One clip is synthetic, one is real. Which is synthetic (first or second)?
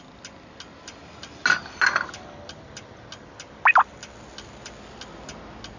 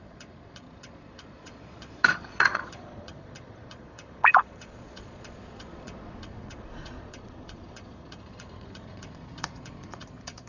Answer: second